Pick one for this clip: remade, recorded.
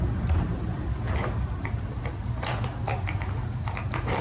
recorded